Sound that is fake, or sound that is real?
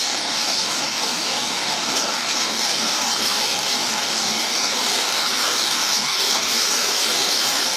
fake